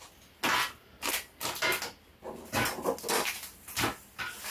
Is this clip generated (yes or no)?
no